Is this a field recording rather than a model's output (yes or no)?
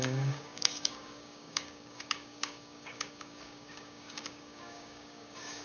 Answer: no